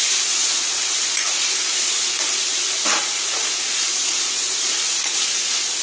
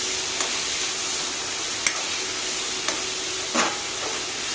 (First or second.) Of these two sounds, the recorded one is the second